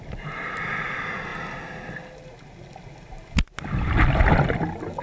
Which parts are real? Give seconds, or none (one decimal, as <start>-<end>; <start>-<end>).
0.0-5.0